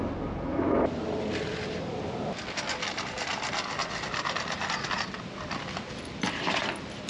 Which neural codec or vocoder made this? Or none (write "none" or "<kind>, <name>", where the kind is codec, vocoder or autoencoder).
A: none